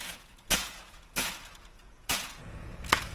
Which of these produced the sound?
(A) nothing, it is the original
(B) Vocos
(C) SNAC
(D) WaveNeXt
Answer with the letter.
B